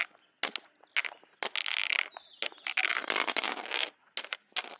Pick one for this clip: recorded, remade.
recorded